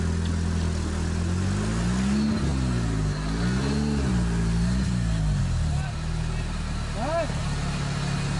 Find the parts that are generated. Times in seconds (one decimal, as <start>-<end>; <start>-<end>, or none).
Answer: none